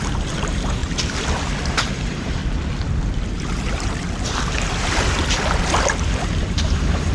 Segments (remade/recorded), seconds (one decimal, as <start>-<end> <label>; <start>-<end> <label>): 0.0-0.8 remade; 0.8-1.7 recorded; 1.7-2.4 remade; 2.4-6.1 recorded; 6.1-7.1 remade